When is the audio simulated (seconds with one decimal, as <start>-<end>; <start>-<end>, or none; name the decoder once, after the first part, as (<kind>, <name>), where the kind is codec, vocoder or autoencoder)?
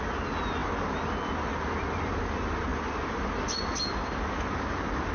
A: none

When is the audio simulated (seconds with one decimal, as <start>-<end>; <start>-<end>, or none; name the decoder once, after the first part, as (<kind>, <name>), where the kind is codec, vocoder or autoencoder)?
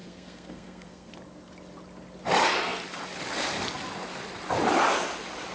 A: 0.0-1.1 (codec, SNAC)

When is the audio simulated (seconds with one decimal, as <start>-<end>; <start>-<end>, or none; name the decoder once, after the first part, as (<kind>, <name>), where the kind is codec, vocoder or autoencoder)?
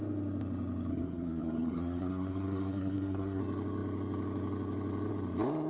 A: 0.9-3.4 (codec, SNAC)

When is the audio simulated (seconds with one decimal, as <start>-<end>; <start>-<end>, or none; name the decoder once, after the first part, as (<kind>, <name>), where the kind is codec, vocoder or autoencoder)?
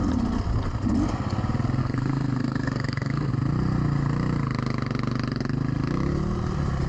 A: 1.8-3.3 (codec, SNAC)